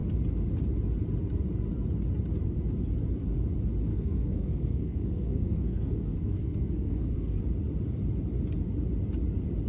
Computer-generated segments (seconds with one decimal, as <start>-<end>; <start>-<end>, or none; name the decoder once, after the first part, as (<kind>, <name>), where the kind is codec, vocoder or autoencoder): 3.9-7.4 (codec, SNAC)